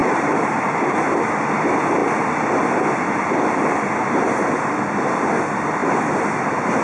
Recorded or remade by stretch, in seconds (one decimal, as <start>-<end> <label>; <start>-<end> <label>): 0.0-0.5 remade; 0.5-6.8 recorded